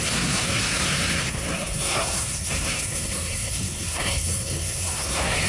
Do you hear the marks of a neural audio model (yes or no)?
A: yes